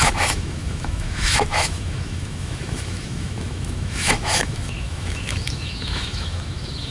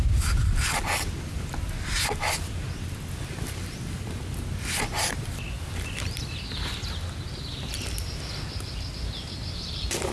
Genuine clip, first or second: second